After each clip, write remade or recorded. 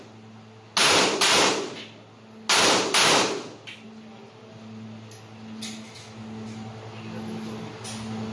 recorded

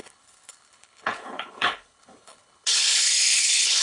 remade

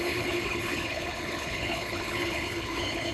remade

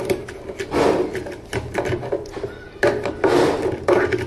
recorded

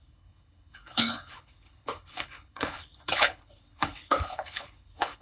remade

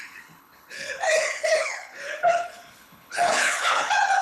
remade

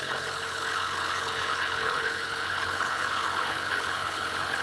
remade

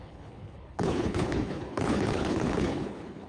remade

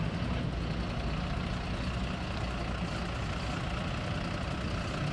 recorded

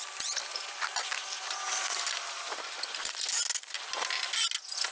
recorded